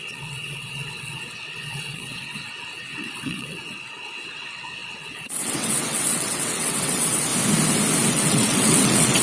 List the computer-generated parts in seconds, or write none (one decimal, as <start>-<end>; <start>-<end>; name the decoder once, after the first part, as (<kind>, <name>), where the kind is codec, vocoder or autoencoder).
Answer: 0.0-7.3 (vocoder, WaveNeXt); 8.1-9.2